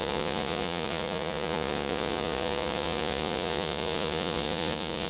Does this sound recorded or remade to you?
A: remade